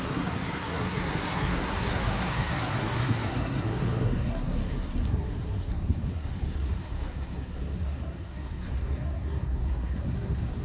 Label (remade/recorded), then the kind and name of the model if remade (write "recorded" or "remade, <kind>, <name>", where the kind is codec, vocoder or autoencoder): remade, codec, SNAC